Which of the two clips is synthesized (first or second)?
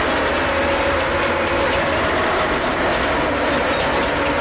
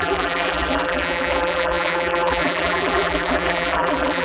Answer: second